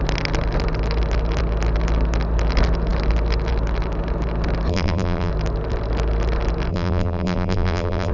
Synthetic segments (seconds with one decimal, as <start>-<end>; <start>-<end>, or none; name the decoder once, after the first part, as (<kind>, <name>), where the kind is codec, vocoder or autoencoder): 4.7-5.3 (vocoder, BigVGAN v2); 6.7-8.1